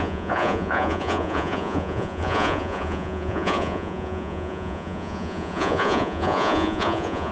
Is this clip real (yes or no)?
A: no